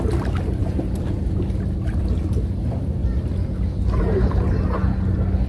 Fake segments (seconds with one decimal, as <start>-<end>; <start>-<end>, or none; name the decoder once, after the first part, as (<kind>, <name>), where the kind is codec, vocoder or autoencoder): 0.6-1.4 (vocoder, BigVGAN v2)